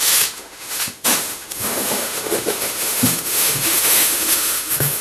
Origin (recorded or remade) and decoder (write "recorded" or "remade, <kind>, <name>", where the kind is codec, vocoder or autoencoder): remade, autoencoder, DAC-VAE